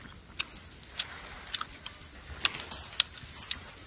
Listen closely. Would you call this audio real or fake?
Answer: real